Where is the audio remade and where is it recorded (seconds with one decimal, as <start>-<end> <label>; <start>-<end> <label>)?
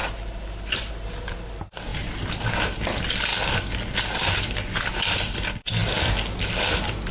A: 0.0-7.1 recorded